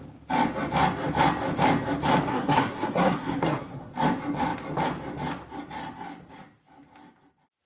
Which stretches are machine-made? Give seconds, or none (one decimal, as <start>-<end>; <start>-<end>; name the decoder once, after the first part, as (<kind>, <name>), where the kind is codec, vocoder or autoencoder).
2.3-3.9 (codec, SNAC)